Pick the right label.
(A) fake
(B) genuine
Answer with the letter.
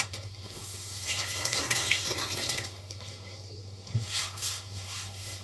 A